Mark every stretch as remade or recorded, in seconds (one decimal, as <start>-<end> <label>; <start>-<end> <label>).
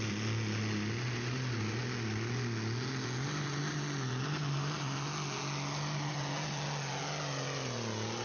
0.0-8.2 recorded